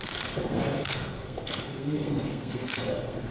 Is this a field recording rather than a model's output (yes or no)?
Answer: no